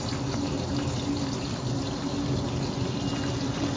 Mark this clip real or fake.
real